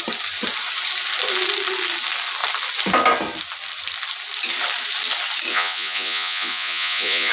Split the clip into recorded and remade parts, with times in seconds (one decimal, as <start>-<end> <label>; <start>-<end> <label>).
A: 0.0-5.5 recorded; 5.5-7.3 remade